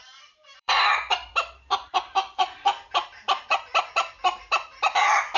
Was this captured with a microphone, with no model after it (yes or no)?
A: no